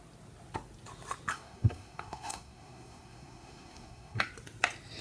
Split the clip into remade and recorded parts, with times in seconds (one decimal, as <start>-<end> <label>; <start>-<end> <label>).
0.0-1.3 recorded; 1.3-4.2 remade; 4.2-5.0 recorded